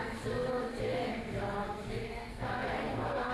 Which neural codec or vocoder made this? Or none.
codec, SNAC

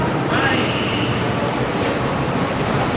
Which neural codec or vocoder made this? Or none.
vocoder, BigVGAN v2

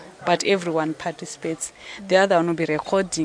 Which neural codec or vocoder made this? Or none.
none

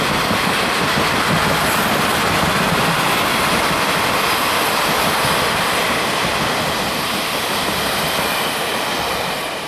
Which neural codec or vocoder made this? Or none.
none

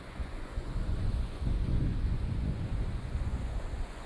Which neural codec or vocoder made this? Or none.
vocoder, Vocos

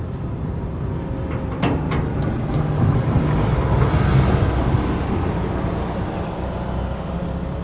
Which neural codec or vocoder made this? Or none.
none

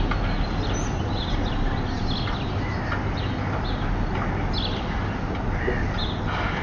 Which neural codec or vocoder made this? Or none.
none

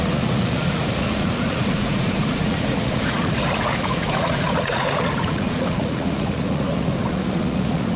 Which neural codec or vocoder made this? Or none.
vocoder, Vocos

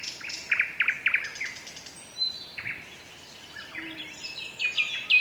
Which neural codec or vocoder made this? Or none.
none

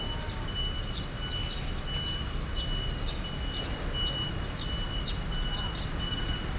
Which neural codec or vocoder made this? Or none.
none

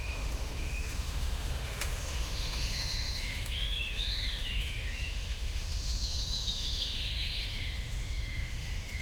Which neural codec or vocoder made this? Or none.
autoencoder, DAC-VAE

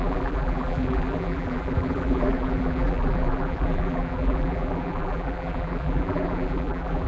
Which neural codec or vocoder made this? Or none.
vocoder, BigVGAN v2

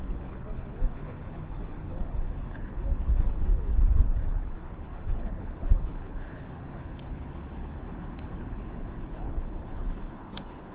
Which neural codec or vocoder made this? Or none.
codec, HILCodec